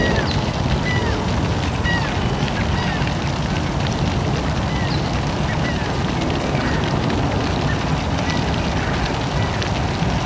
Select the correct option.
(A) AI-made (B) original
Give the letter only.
B